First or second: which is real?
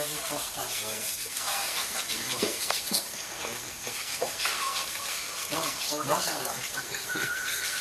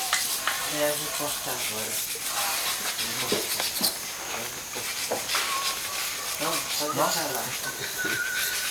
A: second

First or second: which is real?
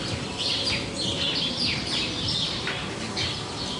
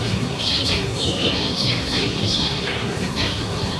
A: first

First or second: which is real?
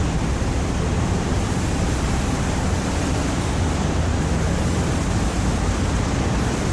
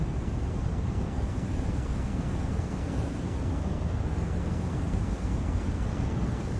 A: first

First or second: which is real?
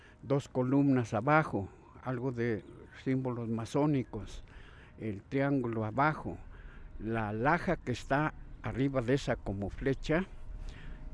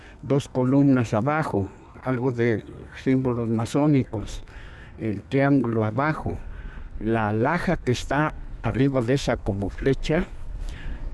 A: first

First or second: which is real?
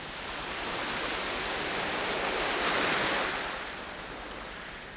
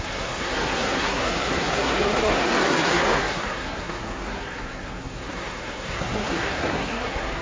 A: first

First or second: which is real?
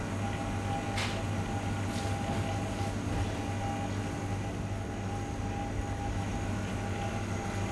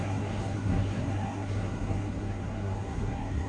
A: first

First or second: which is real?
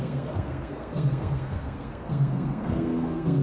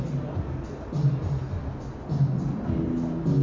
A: second